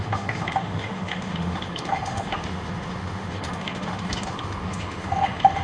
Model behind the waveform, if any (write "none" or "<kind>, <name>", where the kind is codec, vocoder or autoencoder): autoencoder, DAC-VAE